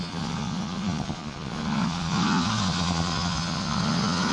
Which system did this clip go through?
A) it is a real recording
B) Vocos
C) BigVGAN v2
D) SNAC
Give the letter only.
B